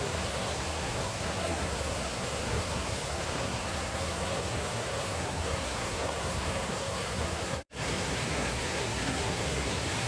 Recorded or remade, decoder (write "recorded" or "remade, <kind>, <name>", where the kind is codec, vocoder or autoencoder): remade, codec, SNAC